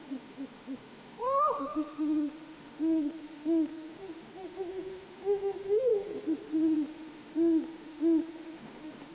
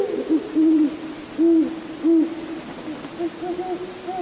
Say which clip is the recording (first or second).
second